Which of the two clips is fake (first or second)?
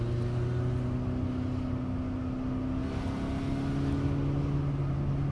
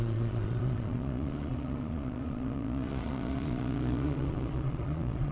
second